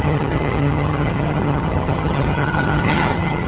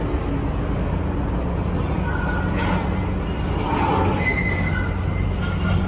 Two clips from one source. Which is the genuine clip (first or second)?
second